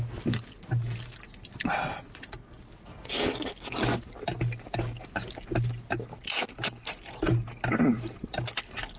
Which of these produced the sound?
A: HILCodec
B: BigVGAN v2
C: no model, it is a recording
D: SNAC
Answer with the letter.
C